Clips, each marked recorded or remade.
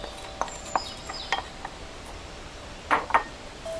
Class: recorded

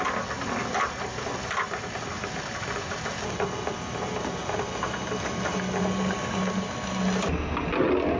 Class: recorded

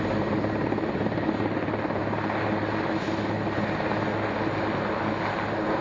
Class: recorded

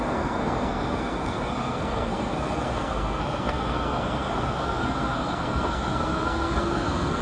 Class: remade